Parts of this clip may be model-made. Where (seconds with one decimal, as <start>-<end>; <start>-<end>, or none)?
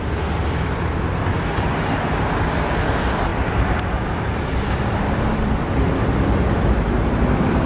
3.3-6.4